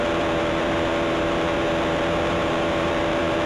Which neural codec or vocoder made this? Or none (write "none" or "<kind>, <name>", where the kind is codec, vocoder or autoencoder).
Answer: vocoder, BigVGAN v2